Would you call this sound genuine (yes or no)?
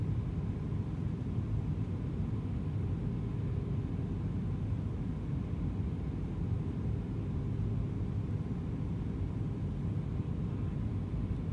yes